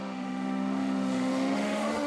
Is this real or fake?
fake